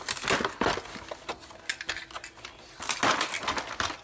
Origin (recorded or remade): recorded